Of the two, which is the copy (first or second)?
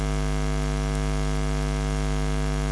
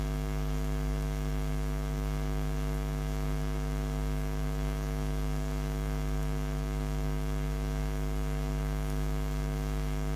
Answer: second